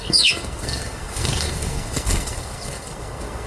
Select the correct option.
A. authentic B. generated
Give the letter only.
B